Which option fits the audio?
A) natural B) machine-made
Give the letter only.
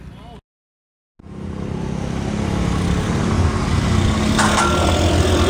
A